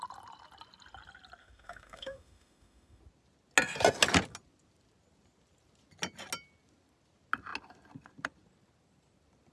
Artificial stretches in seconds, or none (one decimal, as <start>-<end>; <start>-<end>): 1.4-3.0